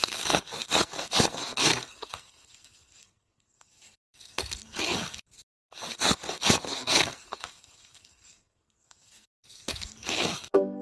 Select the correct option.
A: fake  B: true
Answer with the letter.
A